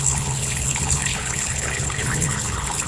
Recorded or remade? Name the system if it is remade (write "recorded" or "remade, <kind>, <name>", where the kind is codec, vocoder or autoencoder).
remade, codec, HILCodec